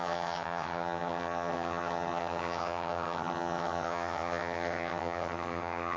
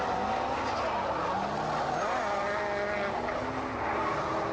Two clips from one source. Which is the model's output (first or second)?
first